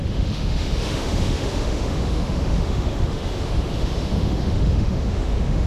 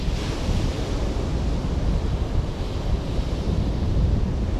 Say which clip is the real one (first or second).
second